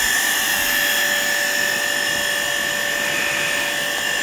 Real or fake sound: real